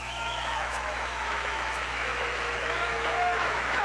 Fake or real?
fake